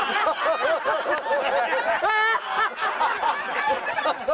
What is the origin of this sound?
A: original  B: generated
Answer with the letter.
A